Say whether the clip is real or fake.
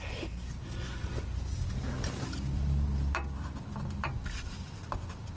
real